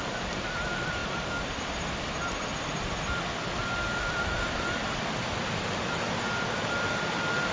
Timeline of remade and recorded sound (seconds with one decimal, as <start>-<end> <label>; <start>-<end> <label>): 0.0-7.5 recorded

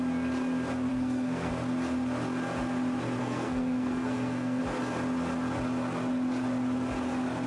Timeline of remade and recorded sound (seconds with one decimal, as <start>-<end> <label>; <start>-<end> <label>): 0.0-0.9 recorded; 0.9-1.5 remade; 1.5-3.2 recorded; 3.2-4.6 remade; 4.6-7.5 recorded

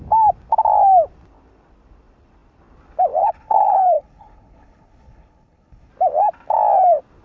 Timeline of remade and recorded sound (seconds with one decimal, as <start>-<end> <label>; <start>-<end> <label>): 0.0-3.2 recorded; 3.2-5.9 remade; 5.9-7.2 recorded

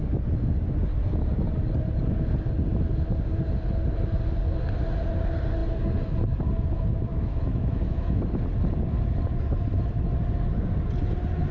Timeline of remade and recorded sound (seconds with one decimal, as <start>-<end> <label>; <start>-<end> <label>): 0.0-7.1 recorded; 7.1-8.2 remade; 8.2-11.5 recorded

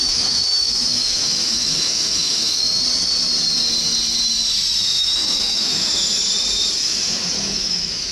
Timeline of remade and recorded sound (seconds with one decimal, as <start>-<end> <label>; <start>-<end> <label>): 0.0-2.8 remade; 2.8-4.8 recorded; 4.8-6.2 remade; 6.2-6.8 recorded; 6.8-8.1 remade

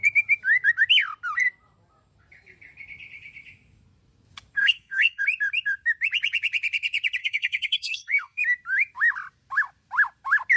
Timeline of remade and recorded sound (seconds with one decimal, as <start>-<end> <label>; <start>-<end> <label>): 0.0-4.6 recorded; 4.6-5.2 remade; 5.2-7.2 recorded; 7.2-8.4 remade; 8.4-10.6 recorded